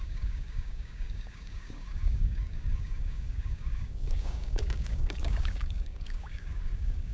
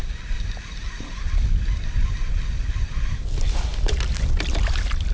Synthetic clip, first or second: first